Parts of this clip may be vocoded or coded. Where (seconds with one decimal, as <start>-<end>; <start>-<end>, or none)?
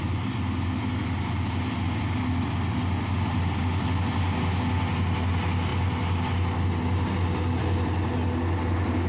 none